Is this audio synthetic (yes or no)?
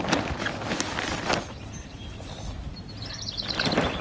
no